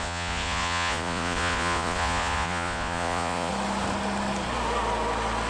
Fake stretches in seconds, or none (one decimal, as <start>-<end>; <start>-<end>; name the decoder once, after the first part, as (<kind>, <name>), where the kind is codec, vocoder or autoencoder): 0.0-3.5 (vocoder, Vocos)